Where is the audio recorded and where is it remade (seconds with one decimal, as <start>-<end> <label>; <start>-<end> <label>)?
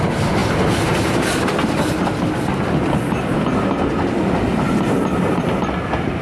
0.0-6.2 recorded